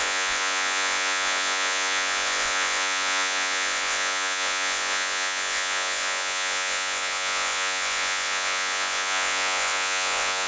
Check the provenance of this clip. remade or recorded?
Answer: remade